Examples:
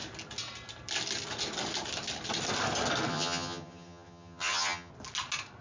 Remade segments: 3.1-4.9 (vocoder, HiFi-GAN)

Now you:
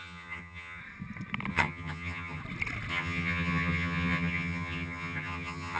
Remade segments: 0.0-0.8 (vocoder, HiFi-GAN); 1.5-2.4; 2.9-5.8

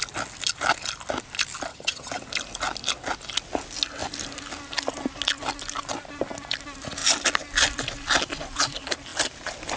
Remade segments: 1.7-2.2 (vocoder, HiFi-GAN)